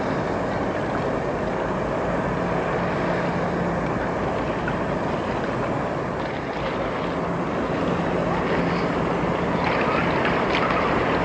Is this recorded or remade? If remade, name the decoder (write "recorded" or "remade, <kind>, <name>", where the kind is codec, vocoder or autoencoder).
recorded